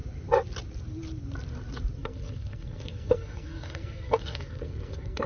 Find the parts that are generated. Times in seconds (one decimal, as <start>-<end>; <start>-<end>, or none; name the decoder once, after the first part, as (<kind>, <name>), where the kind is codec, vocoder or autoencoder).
2.0-5.3 (codec, SNAC)